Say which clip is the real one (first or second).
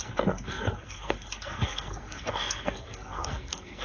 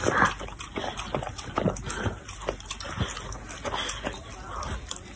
second